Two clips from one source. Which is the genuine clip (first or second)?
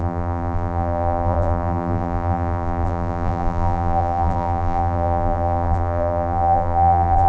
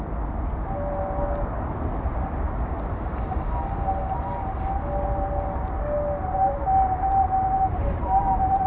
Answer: second